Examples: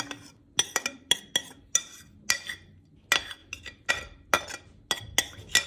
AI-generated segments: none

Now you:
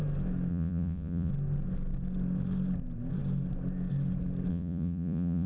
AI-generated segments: 0.5-1.3 (vocoder, Vocos); 4.5-5.5

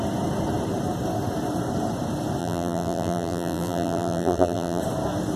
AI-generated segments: 2.4-4.8 (vocoder, BigVGAN v2)

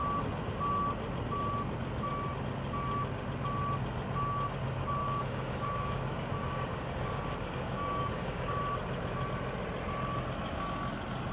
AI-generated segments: 5.0-8.6 (codec, DAC)